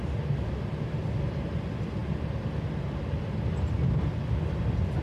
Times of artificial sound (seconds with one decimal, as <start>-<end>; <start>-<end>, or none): none